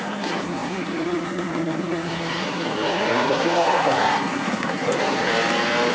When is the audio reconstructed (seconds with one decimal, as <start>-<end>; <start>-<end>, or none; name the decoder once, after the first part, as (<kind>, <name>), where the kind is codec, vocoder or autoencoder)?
0.0-5.3 (codec, SNAC)